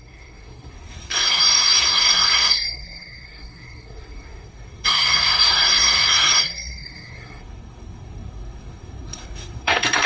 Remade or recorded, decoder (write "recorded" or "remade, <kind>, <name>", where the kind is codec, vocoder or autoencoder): remade, codec, SNAC